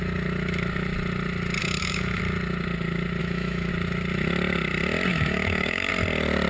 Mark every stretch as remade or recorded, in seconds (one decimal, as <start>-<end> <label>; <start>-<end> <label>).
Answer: 0.0-1.6 recorded; 1.6-2.2 remade; 2.2-3.2 recorded; 3.2-3.7 remade; 3.7-5.1 recorded; 5.1-5.9 remade; 5.9-6.5 recorded